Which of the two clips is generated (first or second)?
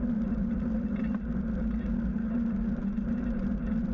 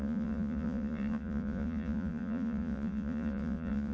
second